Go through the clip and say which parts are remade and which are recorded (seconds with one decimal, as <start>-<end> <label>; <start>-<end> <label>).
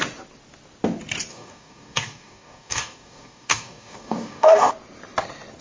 0.0-1.3 recorded; 1.3-4.7 remade; 4.7-5.6 recorded